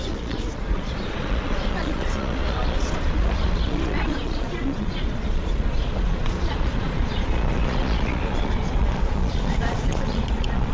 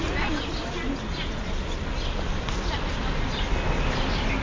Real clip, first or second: second